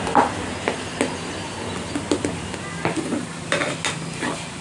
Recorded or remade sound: recorded